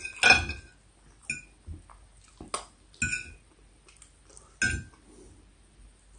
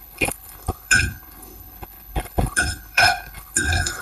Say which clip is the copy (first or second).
second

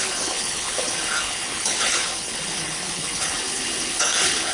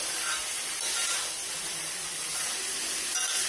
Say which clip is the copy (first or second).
first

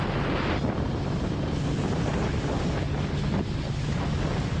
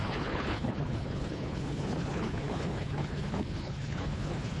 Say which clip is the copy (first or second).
second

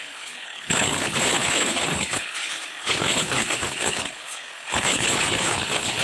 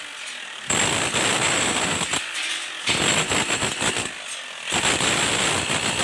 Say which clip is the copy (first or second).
first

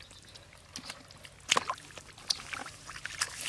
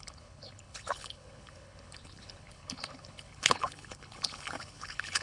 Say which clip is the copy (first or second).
second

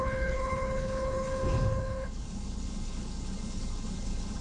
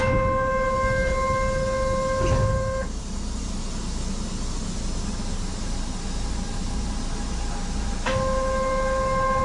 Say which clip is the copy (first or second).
first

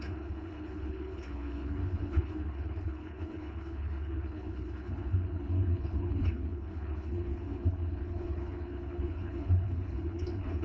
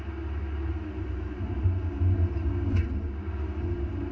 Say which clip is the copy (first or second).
first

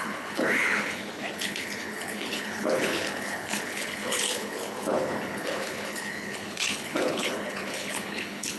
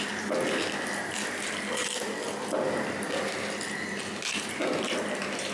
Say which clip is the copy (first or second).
first